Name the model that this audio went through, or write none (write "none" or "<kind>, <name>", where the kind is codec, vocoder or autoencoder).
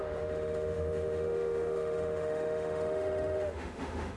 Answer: autoencoder, DAC-VAE